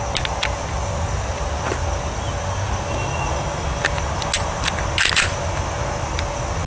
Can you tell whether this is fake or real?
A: real